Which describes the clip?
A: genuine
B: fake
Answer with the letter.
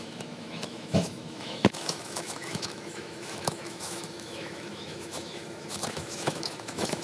B